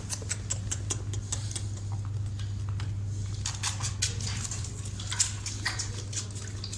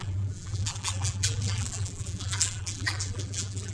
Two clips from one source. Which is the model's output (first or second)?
second